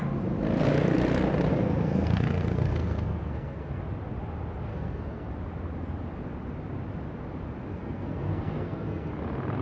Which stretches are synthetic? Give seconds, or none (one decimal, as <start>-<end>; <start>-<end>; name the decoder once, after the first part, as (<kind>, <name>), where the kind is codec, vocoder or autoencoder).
1.5-3.8 (codec, SNAC); 4.7-5.3; 7.7-9.1